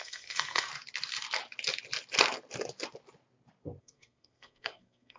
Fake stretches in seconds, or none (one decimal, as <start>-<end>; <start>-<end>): 0.0-0.7; 3.8-5.2